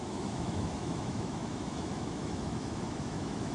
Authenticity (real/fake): fake